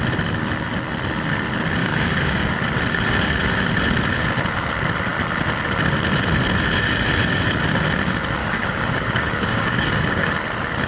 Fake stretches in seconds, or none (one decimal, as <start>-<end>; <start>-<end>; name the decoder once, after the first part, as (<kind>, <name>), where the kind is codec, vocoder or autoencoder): 1.8-2.5 (codec, DAC); 8.4-10.3